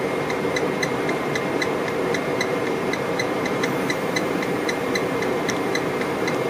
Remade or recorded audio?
remade